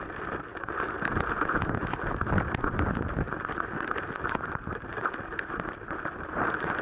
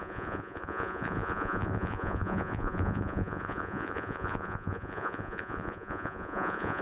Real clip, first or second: first